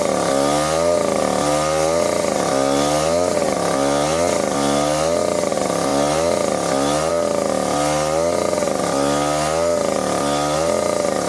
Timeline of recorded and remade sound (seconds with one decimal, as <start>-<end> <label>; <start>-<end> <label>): 0.0-11.3 recorded